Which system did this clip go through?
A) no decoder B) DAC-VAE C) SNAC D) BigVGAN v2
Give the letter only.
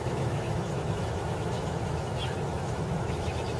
B